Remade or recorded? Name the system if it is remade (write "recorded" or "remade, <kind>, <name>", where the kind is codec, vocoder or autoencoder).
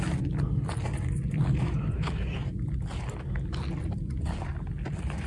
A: recorded